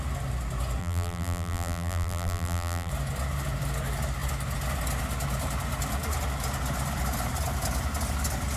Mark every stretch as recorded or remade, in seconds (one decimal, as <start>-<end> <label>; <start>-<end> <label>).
0.0-0.8 recorded; 0.8-2.9 remade; 2.9-8.6 recorded